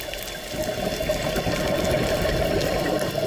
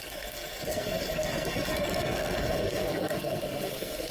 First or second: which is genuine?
first